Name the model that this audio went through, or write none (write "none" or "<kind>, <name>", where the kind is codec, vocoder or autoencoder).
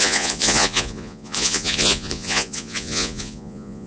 vocoder, Vocos